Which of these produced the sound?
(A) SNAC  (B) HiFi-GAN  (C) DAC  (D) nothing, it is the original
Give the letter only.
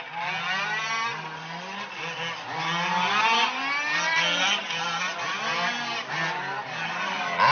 D